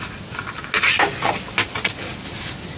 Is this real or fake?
real